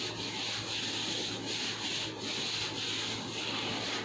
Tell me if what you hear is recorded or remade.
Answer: recorded